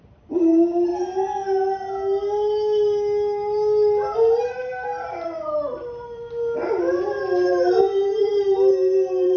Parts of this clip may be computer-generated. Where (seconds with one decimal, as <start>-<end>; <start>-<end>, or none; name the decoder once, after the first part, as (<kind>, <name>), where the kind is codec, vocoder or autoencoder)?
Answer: 0.0-0.9 (vocoder, BigVGAN v2); 4.5-9.4